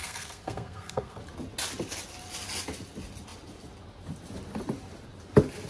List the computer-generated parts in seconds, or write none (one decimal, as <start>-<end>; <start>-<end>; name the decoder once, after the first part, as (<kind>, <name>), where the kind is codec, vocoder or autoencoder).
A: 0.0-1.2 (codec, SNAC)